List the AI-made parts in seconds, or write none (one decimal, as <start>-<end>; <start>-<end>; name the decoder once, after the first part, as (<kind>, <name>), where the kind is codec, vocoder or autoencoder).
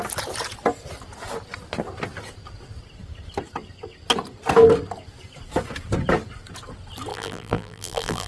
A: 7.1-8.3 (vocoder, BigVGAN v2)